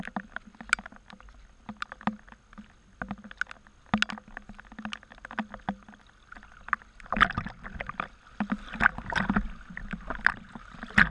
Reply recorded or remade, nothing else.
recorded